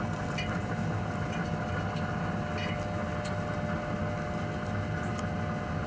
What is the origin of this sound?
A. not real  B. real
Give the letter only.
B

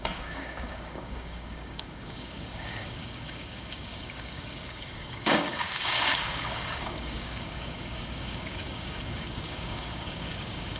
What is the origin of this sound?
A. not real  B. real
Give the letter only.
A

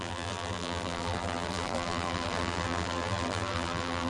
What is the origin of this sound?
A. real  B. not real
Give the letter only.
B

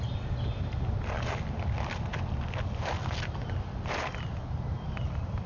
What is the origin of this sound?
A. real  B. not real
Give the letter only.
A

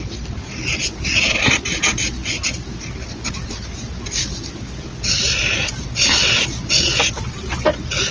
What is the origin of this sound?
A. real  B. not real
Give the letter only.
A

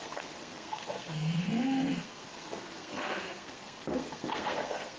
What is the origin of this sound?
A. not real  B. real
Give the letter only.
A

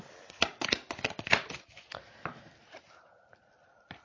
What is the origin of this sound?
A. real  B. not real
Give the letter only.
A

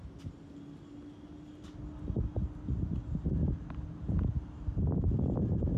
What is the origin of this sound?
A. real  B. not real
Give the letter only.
A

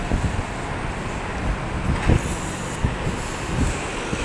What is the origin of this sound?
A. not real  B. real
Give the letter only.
B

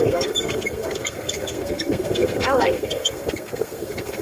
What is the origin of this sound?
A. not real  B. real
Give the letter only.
A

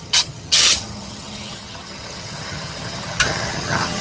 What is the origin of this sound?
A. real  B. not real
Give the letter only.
B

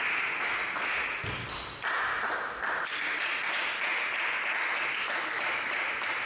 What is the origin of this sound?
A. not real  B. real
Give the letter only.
B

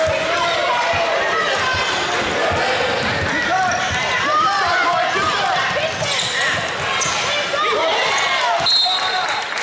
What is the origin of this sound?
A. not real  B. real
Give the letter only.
B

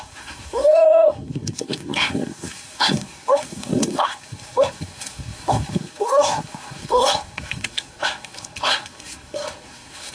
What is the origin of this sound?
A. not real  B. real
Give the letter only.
A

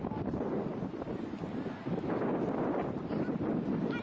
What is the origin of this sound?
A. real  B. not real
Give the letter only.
A